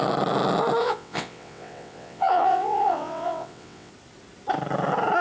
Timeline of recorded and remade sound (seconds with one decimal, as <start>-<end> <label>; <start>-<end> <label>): 0.0-0.8 recorded; 0.8-3.9 remade; 3.9-5.2 recorded